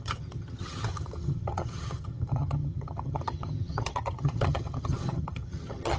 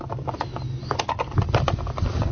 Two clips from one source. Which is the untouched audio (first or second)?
second